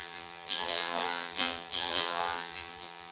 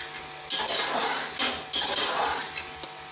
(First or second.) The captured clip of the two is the second